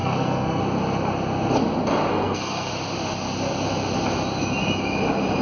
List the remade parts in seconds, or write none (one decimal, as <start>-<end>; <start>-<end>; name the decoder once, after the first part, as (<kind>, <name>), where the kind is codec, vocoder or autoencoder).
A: 0.0-0.6 (codec, SNAC); 2.1-2.7